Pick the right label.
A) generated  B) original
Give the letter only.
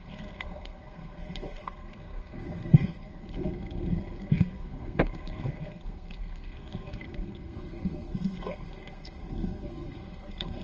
A